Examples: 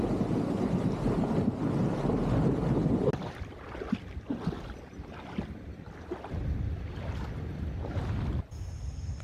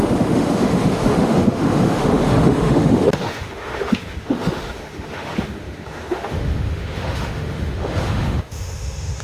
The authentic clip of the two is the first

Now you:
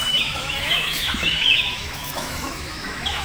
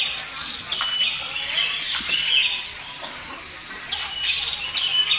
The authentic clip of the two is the second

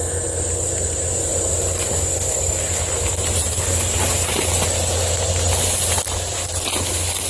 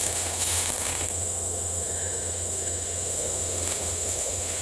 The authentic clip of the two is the first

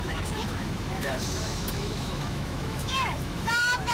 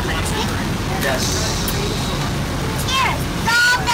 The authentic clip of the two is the second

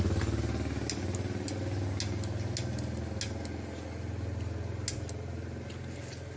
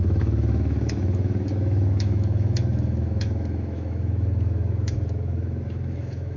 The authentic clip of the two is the first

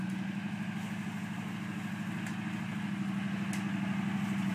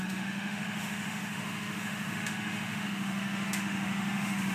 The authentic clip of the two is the first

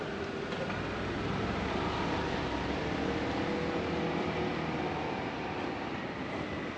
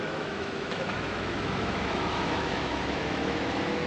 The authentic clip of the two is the first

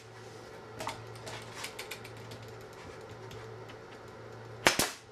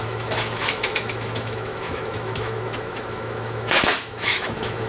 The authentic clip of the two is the first